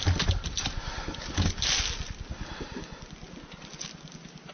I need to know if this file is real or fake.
real